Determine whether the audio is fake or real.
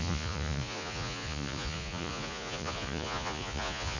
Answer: fake